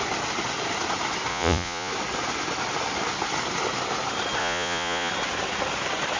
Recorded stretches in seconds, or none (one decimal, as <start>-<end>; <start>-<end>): 0.0-1.3; 1.9-4.4; 5.1-6.2